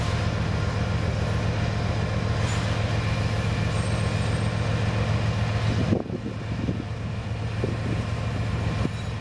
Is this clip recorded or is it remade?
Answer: recorded